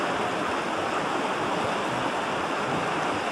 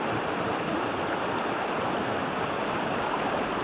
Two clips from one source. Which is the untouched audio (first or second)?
first